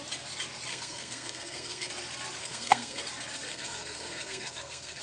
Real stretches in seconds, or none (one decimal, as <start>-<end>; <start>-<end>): 0.0-0.7; 1.9-2.4; 3.0-3.5